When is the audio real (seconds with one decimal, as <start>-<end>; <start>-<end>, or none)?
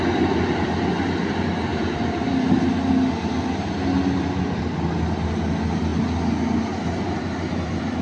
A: 0.0-1.7; 2.9-8.0